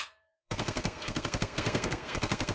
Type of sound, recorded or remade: remade